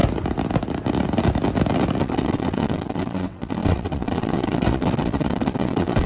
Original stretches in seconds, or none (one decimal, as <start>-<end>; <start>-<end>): 0.0-2.0